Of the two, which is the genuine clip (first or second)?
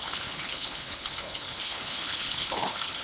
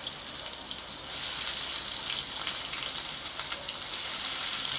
second